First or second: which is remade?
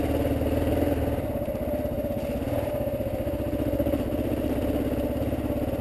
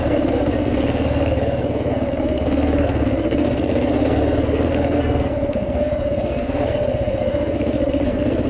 second